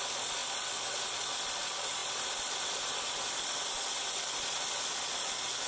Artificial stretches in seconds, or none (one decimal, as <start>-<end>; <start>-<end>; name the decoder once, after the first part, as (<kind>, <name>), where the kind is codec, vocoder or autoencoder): none